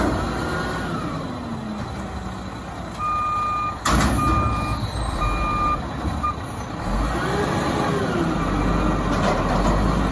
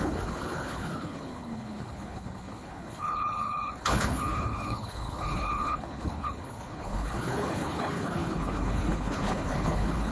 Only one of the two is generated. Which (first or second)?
second